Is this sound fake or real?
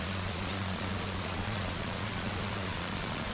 fake